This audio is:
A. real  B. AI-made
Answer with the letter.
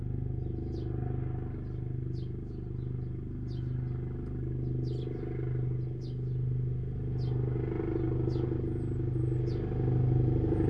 A